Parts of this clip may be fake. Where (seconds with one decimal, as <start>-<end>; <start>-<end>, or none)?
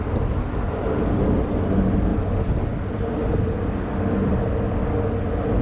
none